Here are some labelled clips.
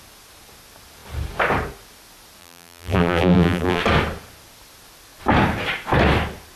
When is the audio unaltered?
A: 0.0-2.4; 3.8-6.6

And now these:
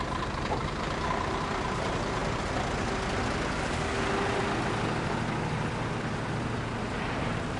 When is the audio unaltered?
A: 2.2-6.8

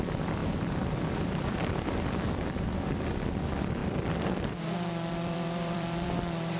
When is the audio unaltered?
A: 3.8-5.1

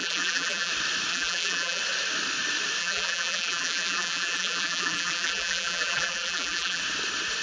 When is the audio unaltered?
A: 0.7-1.1; 1.8-2.8; 6.8-7.4